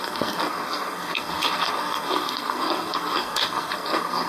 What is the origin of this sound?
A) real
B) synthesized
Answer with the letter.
B